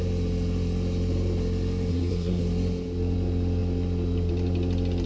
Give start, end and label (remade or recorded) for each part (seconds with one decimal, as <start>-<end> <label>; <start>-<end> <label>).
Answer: 0.0-1.9 recorded; 1.9-2.4 remade; 2.4-5.1 recorded